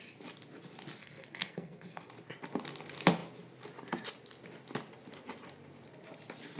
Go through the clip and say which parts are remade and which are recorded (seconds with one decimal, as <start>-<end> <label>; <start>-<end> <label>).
0.0-1.0 recorded; 1.0-2.1 remade; 2.1-6.6 recorded